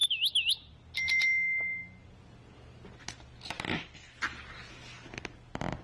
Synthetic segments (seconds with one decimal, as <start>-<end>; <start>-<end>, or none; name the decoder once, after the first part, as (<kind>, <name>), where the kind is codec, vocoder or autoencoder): none